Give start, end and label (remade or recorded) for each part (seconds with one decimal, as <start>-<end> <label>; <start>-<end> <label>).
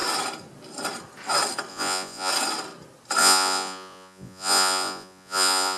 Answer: 0.0-1.7 recorded; 1.7-2.3 remade; 2.3-3.2 recorded; 3.2-5.8 remade